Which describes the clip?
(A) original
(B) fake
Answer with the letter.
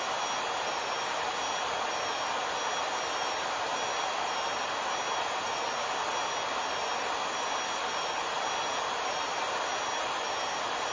A